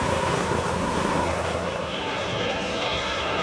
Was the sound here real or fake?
fake